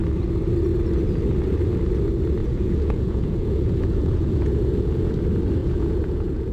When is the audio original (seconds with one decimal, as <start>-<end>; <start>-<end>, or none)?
0.0-2.4; 5.1-5.6